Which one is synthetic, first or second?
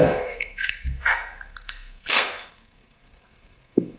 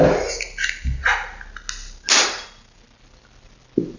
first